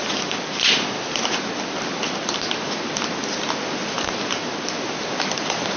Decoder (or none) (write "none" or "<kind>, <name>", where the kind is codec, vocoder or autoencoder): vocoder, BigVGAN v2